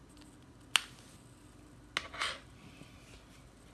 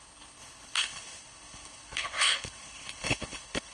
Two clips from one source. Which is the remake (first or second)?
second